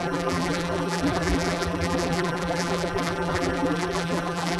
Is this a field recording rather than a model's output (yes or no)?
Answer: no